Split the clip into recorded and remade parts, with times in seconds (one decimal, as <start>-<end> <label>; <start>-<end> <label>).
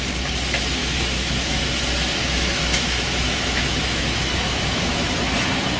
0.0-0.8 recorded; 0.8-1.6 remade; 1.6-2.2 recorded; 2.2-5.1 remade; 5.1-5.8 recorded